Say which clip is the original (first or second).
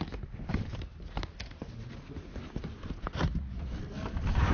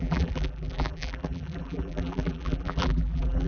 first